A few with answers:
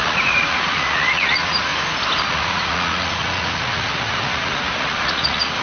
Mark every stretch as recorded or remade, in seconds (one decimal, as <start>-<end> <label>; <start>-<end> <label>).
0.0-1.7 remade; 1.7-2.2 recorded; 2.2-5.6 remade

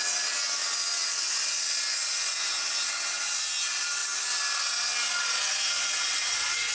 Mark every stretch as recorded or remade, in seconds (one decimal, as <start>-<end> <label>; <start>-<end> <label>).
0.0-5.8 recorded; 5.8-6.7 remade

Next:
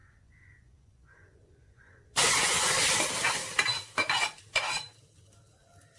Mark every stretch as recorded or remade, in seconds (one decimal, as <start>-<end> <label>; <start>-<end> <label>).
0.0-2.7 remade; 2.7-6.0 recorded

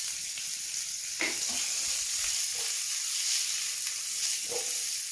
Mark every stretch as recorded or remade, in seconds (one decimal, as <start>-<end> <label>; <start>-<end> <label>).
0.0-5.1 recorded